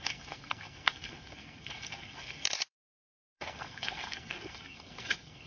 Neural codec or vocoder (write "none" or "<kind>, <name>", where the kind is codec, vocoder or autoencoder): codec, SNAC